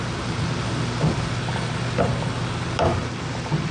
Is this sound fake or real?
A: real